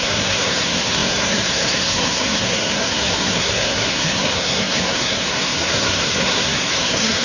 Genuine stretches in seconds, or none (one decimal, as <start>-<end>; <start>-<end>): none